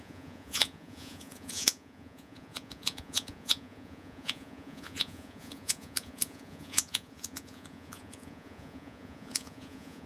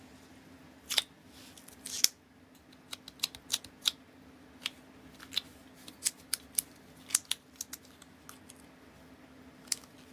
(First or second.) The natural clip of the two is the second